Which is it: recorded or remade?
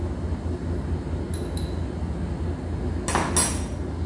recorded